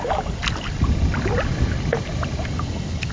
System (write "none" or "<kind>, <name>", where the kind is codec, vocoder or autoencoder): none